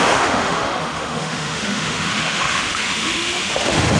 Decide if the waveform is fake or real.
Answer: fake